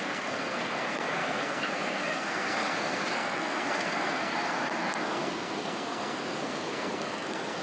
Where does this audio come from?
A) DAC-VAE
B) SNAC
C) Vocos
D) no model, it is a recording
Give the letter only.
B